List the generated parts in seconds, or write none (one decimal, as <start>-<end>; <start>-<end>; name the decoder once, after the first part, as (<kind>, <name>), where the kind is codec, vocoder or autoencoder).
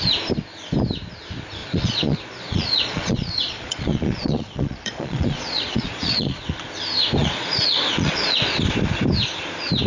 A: 1.6-6.5 (vocoder, Vocos); 7.2-8.4